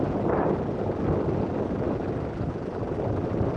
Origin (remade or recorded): recorded